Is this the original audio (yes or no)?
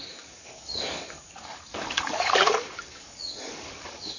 no